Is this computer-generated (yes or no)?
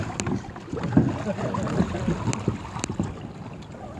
no